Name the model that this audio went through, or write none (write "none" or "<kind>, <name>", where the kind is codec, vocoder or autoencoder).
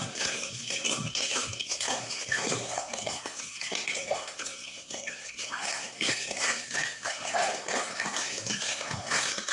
codec, SNAC